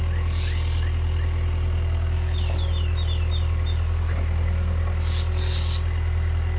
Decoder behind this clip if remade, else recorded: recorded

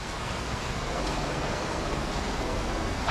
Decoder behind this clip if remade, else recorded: remade, codec, SNAC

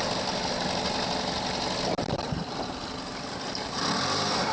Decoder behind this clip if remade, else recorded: recorded